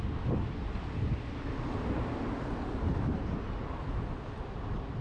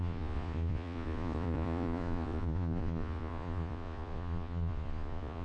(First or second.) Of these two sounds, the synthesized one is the second